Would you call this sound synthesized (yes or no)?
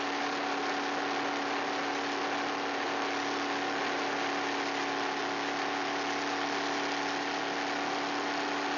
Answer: no